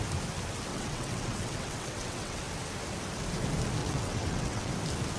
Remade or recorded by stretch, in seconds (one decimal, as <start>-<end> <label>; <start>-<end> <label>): 0.0-0.7 recorded; 0.7-2.4 remade; 2.4-3.8 recorded; 3.8-4.7 remade; 4.7-5.2 recorded